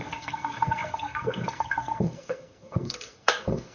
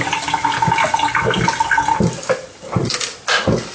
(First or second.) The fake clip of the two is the first